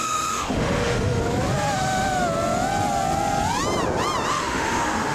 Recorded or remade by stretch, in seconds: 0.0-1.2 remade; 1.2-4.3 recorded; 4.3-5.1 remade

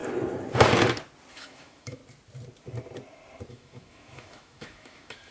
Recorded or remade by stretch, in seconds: 0.0-1.3 recorded; 1.3-2.0 remade; 2.0-3.5 recorded; 3.5-5.3 remade

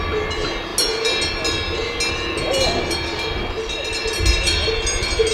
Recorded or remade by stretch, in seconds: 0.0-5.3 recorded